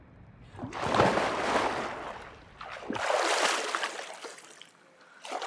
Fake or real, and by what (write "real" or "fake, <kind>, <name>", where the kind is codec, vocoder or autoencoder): real